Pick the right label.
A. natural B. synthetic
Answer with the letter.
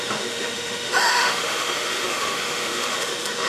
B